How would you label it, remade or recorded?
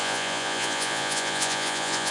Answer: remade